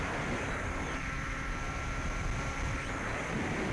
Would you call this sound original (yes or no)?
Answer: no